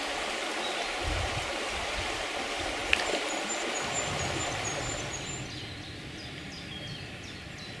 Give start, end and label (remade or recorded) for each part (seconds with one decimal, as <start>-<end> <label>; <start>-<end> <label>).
0.0-1.0 recorded; 1.0-1.6 remade; 1.6-7.8 recorded